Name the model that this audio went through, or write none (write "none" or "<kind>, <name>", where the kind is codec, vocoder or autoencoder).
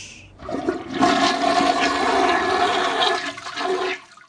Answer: none